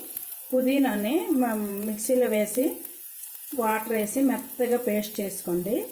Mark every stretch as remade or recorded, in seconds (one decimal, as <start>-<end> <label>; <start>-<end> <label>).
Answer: 0.0-1.2 remade; 1.2-1.7 recorded; 1.7-5.9 remade